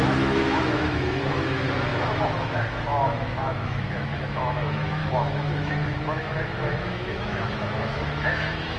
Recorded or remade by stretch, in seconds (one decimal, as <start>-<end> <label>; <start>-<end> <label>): 0.0-8.8 remade